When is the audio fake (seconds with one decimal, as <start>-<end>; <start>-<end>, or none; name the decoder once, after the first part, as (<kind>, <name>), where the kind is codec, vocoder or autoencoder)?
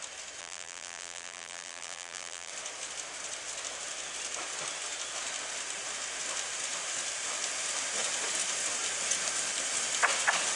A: 0.4-2.5 (vocoder, BigVGAN v2)